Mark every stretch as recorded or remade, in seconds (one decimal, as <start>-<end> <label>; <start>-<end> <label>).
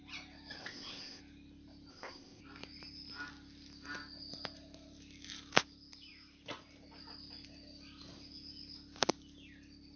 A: 0.0-0.6 recorded; 0.6-1.2 remade; 1.2-1.9 recorded; 1.9-2.4 remade; 2.4-10.0 recorded